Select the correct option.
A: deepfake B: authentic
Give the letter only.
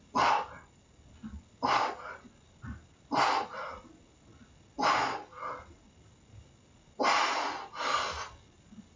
B